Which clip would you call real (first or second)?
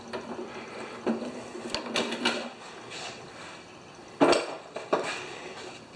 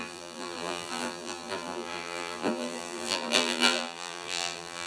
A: first